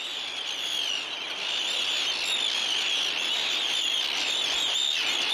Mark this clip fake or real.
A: real